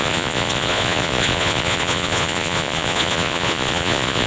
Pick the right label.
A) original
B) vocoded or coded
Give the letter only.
B